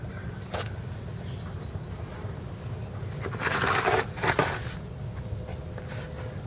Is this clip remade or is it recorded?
recorded